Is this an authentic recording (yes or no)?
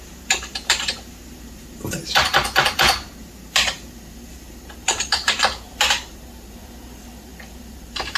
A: no